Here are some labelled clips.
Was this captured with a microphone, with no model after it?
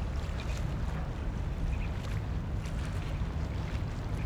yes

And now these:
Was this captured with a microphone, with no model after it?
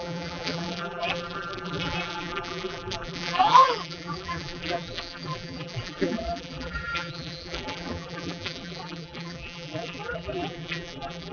no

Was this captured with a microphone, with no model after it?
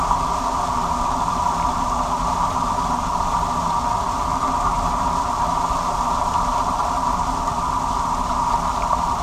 yes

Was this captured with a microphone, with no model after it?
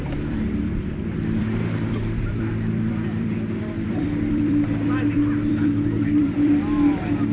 no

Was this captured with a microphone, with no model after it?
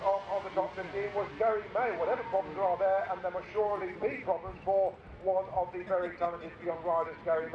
yes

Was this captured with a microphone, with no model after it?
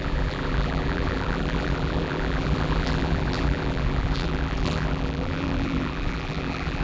no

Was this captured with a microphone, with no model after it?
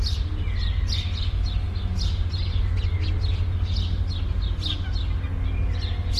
yes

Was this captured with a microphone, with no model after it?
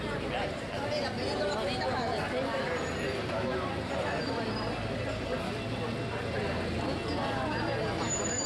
yes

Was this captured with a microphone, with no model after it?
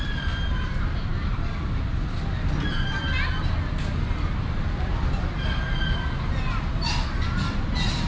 yes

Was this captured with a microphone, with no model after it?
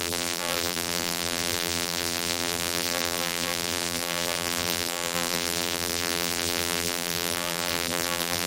no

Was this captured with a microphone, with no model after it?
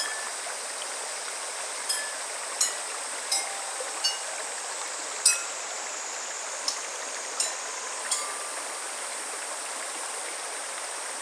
yes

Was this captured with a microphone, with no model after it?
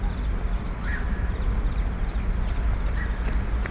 yes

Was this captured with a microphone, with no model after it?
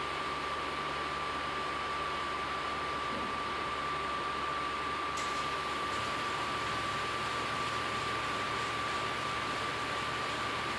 no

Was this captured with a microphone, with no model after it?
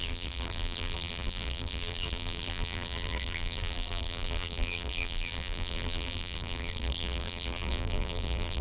no